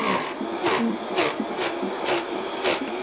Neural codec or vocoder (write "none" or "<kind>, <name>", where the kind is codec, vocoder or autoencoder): none